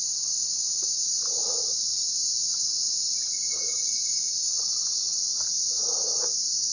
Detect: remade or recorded recorded